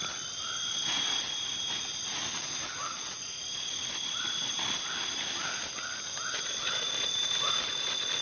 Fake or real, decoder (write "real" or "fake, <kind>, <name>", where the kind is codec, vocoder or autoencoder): real